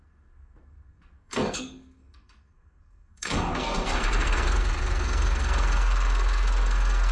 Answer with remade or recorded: remade